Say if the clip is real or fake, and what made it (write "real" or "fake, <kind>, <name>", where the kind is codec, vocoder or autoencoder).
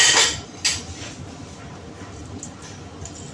real